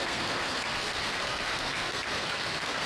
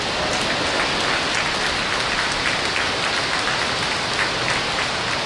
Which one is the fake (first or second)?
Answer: first